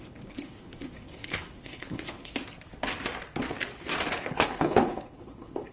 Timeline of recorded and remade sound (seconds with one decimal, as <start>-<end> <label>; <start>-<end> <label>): 0.0-2.3 remade; 2.3-4.2 recorded; 4.2-5.7 remade